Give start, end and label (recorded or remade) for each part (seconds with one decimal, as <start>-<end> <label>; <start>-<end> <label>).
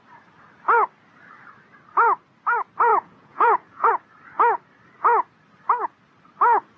0.0-2.9 recorded; 2.9-3.9 remade; 3.9-6.8 recorded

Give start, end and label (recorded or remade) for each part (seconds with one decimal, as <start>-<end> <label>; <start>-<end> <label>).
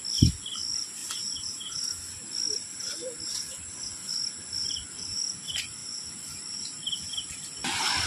0.0-1.0 recorded; 1.0-1.8 remade; 1.8-4.6 recorded; 4.6-5.2 remade; 5.2-8.1 recorded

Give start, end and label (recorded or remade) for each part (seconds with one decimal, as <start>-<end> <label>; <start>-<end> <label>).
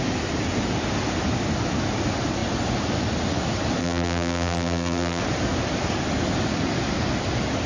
0.0-3.8 recorded; 3.8-5.2 remade; 5.2-7.7 recorded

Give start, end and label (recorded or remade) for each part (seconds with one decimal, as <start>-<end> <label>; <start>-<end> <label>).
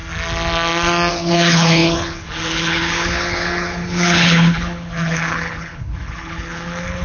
0.0-1.1 recorded; 1.1-7.0 remade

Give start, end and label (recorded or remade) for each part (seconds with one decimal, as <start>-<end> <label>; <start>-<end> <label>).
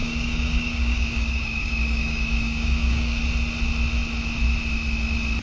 0.0-3.2 remade; 3.2-5.4 recorded